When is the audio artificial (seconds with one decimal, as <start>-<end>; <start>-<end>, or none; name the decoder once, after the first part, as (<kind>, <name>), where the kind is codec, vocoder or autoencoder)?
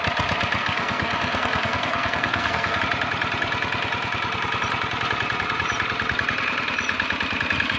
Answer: 0.6-2.8 (codec, SNAC)